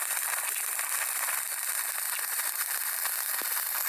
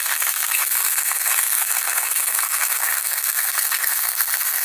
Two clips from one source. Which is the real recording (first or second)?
first